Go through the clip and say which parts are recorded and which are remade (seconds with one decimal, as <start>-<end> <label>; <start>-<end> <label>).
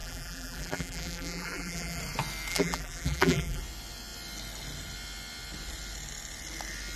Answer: 0.0-2.0 remade; 2.0-2.5 recorded; 2.5-3.6 remade; 3.6-7.0 recorded